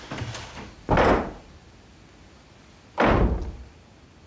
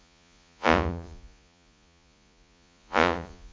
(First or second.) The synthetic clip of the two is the second